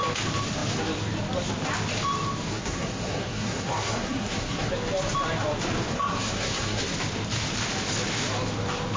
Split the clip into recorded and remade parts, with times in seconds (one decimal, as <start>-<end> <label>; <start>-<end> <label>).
0.0-2.5 recorded; 2.5-4.7 remade; 4.7-5.9 recorded; 5.9-6.8 remade; 6.8-9.0 recorded

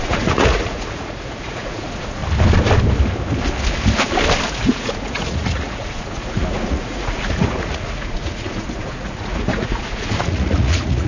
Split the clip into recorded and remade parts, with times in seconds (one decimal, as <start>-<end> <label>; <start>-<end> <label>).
0.0-2.2 remade; 2.2-4.5 recorded; 4.5-11.1 remade

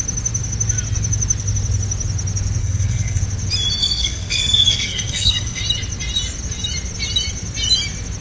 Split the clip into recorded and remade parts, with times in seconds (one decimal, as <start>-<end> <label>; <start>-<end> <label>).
0.0-2.6 recorded; 2.6-3.2 remade; 3.2-3.8 recorded; 3.8-5.6 remade; 5.6-8.2 recorded

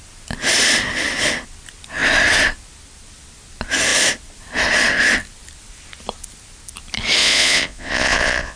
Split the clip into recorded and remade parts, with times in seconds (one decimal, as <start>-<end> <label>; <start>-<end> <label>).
0.0-7.2 recorded; 7.2-8.6 remade

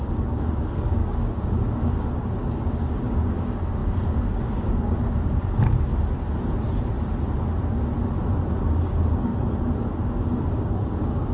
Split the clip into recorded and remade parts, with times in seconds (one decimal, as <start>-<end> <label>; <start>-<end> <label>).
0.0-5.9 remade; 5.9-8.7 recorded; 8.7-9.3 remade; 9.3-10.0 recorded; 10.0-11.3 remade

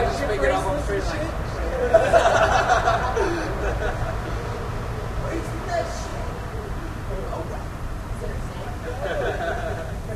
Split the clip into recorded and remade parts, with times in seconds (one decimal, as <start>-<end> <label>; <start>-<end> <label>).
0.0-6.1 recorded; 6.1-8.2 remade; 8.2-10.2 recorded

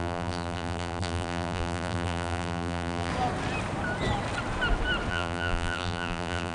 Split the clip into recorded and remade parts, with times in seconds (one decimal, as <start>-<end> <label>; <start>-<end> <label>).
0.0-3.1 remade; 3.1-5.1 recorded; 5.1-6.5 remade

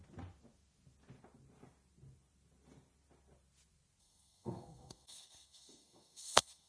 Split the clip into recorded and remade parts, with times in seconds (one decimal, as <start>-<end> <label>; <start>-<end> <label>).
0.0-4.0 recorded; 4.0-6.7 remade